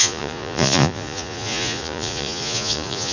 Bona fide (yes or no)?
no